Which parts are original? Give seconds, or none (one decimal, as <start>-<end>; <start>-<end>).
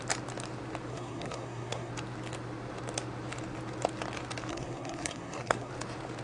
0.0-0.9; 1.9-4.5; 5.7-6.2